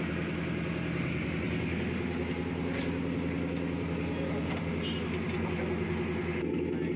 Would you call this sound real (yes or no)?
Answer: yes